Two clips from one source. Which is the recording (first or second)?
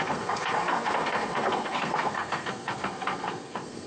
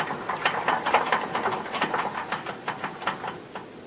second